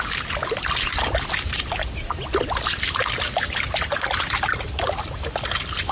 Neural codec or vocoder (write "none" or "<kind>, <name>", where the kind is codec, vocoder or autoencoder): none